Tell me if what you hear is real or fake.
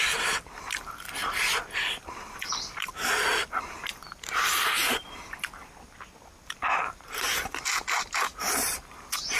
fake